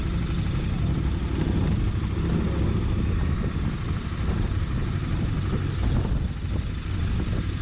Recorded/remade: recorded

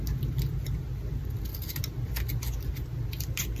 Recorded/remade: recorded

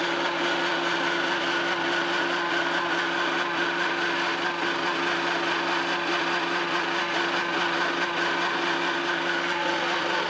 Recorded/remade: recorded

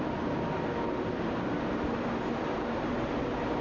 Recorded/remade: recorded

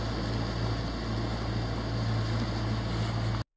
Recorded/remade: recorded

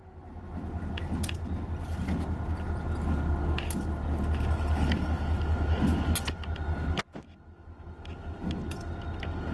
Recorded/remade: recorded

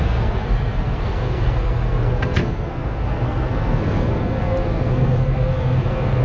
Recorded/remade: remade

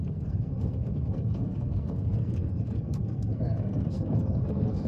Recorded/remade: remade